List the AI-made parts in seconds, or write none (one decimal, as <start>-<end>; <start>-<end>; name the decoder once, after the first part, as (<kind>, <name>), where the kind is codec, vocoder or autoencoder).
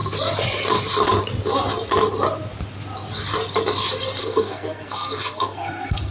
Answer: 4.2-6.1 (codec, SNAC)